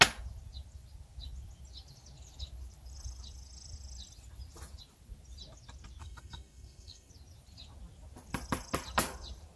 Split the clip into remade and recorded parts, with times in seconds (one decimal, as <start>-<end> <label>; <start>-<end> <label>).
0.0-6.0 recorded; 6.0-7.1 remade; 7.1-9.6 recorded